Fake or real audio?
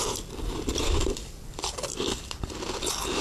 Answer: fake